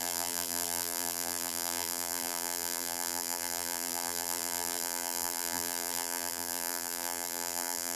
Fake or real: fake